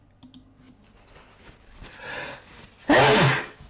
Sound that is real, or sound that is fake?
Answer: real